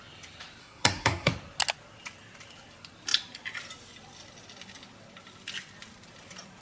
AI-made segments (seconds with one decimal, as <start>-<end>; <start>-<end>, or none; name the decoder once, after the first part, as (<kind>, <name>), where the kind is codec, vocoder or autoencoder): 0.6-1.3 (codec, SNAC)